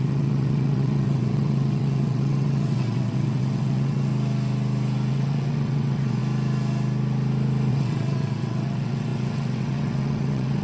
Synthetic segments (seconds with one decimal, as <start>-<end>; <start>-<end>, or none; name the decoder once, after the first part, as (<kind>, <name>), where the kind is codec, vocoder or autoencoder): 0.0-4.1 (vocoder, WaveNeXt); 5.1-6.2; 7.7-10.6